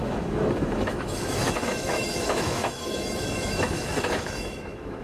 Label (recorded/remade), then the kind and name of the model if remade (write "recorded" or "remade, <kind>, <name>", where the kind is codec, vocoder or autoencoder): remade, autoencoder, DAC-VAE